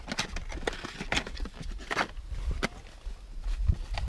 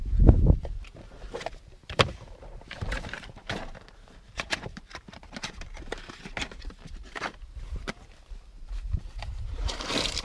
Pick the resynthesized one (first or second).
second